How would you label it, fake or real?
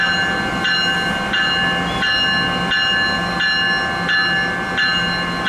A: real